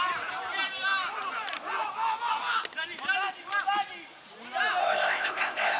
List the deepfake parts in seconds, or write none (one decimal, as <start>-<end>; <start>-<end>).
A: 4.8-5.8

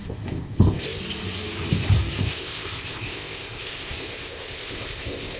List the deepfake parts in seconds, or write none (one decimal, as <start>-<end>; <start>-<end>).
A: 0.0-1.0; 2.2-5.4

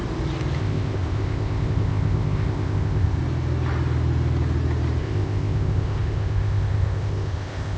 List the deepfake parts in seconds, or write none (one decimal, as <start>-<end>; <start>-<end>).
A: 0.6-3.2; 5.0-7.8